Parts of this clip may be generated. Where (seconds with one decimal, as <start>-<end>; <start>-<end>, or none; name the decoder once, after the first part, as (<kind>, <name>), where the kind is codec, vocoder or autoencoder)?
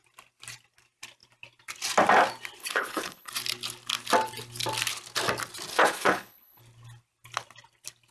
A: 2.6-3.3 (codec, HILCodec); 5.7-6.6